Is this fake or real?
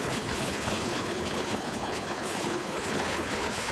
fake